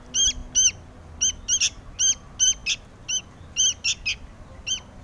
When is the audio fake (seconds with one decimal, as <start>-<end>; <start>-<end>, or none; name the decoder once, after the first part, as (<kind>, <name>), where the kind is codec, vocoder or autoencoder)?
none